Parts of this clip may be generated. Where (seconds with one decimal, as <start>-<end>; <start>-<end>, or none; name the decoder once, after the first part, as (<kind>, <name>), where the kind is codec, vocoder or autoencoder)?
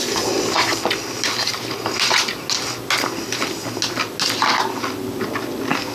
none